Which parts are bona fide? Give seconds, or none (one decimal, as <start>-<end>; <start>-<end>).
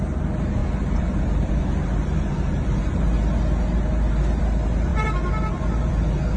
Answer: 0.0-6.4